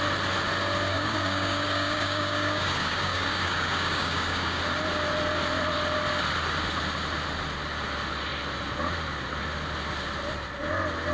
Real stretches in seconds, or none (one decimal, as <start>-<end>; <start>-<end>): 0.0-0.9; 4.6-11.1